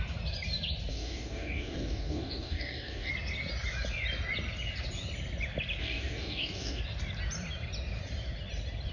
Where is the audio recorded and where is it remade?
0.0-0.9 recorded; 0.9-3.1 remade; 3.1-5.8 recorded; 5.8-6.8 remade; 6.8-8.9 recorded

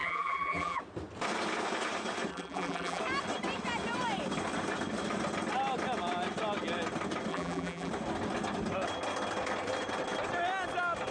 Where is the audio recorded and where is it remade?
0.0-0.8 remade; 0.8-2.3 recorded; 2.3-3.0 remade; 3.0-7.3 recorded; 7.3-7.9 remade; 7.9-11.1 recorded

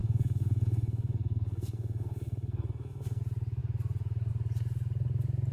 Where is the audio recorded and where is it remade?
0.0-3.2 remade; 3.2-5.5 recorded

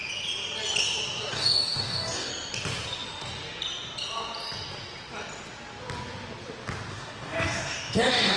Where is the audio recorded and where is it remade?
0.0-1.3 recorded; 1.3-2.3 remade; 2.3-6.9 recorded; 6.9-8.4 remade

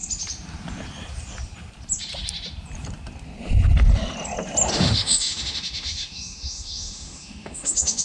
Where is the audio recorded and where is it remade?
0.0-4.7 recorded; 4.7-8.0 remade

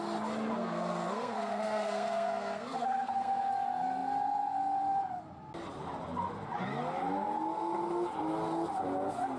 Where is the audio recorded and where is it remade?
0.0-0.6 recorded; 0.6-3.5 remade; 3.5-9.4 recorded